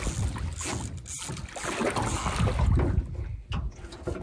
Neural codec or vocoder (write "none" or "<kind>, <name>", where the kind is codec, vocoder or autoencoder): none